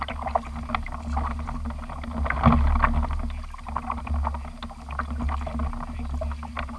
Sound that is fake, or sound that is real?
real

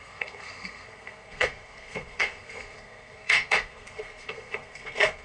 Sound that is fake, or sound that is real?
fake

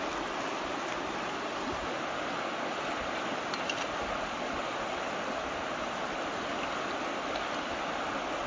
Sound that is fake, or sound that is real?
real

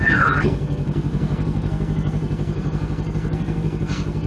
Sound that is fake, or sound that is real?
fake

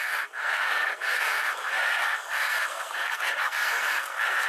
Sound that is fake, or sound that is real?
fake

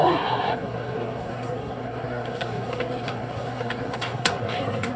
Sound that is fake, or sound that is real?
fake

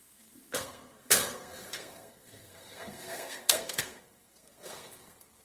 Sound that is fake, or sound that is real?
fake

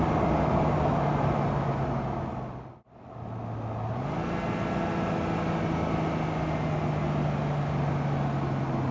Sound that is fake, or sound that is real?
real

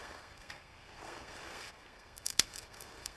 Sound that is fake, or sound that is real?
fake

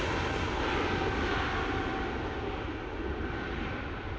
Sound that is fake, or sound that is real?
real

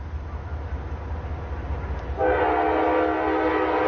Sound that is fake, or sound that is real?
real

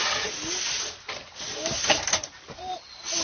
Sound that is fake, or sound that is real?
real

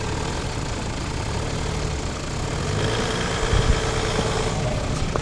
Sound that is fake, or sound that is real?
real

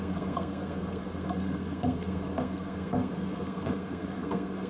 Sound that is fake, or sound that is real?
fake